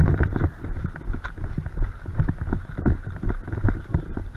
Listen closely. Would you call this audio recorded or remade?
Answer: recorded